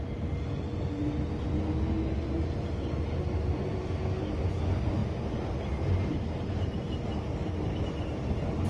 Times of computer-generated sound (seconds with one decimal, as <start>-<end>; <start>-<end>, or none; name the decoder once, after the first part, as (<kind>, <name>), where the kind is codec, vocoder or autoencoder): none